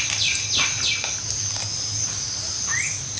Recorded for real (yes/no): yes